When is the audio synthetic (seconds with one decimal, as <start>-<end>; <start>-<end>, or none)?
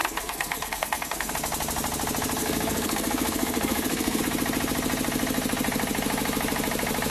0.0-1.3; 2.4-4.2